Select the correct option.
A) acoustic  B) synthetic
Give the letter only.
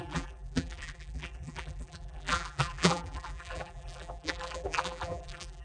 B